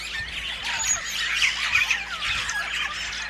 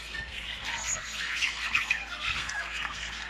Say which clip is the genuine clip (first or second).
first